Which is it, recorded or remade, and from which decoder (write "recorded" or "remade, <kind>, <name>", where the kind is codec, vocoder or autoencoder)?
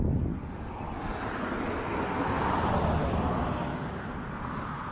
recorded